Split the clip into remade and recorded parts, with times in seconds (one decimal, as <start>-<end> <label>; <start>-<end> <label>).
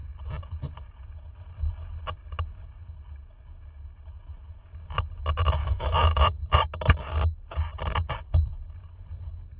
0.0-5.6 recorded; 5.6-6.2 remade; 6.2-9.6 recorded